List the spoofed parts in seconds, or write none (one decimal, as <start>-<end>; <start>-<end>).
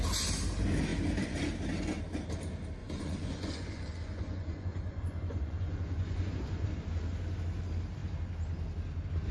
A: 2.8-6.7